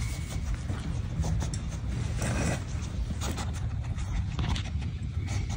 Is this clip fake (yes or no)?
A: no